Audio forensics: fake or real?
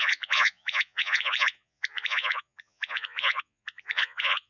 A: fake